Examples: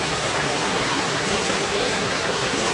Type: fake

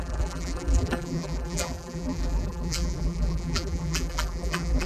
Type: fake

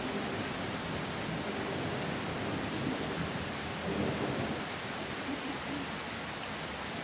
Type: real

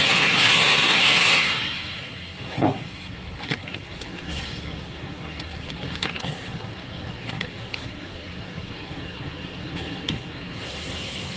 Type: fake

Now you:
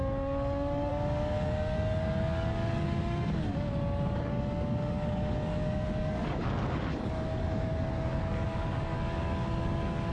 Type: fake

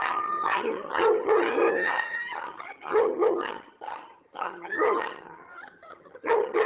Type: fake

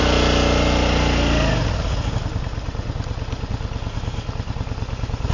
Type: real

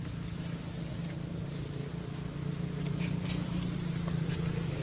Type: real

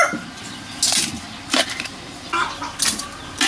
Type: real